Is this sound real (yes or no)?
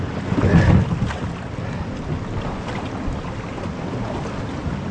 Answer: yes